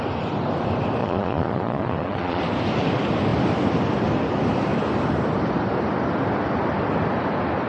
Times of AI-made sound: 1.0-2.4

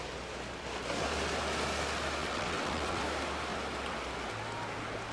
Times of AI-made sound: 2.2-3.0

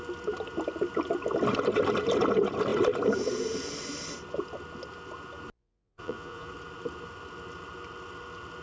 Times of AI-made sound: 5.6-6.5

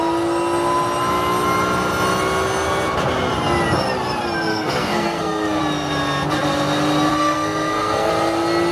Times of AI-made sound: 4.5-5.6; 7.1-8.1